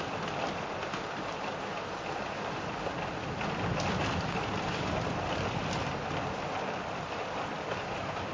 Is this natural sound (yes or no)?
no